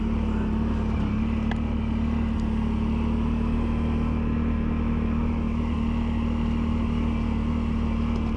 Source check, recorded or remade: recorded